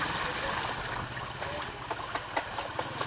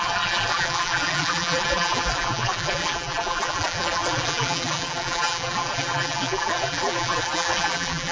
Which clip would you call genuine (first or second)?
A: first